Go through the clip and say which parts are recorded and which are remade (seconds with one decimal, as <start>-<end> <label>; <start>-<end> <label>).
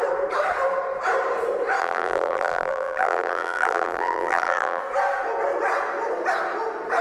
0.0-1.8 recorded; 1.8-4.8 remade; 4.8-7.0 recorded